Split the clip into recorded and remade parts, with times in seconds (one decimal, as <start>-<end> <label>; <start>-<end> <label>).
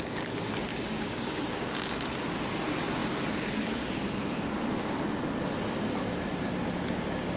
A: 0.0-0.7 recorded; 0.7-1.9 remade; 1.9-7.4 recorded